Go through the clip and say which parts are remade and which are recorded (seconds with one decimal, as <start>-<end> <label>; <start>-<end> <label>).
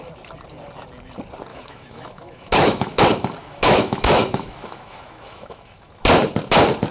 0.0-1.5 recorded; 1.5-3.0 remade; 3.0-3.4 recorded; 3.4-5.9 remade; 5.9-6.9 recorded